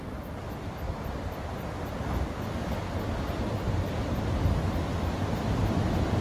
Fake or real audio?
real